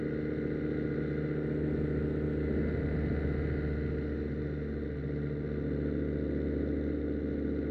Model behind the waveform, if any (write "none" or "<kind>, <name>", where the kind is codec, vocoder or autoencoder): none